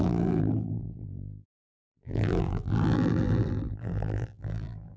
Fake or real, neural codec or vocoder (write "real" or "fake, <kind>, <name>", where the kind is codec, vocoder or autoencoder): fake, vocoder, BigVGAN v2